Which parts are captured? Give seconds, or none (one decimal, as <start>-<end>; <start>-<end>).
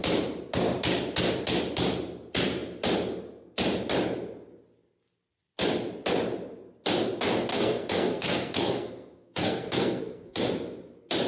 0.0-7.5; 10.4-11.3